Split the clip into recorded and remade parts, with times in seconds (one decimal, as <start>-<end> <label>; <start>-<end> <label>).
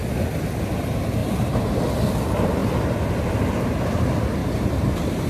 0.0-1.2 recorded; 1.2-1.8 remade; 1.8-4.4 recorded; 4.4-5.3 remade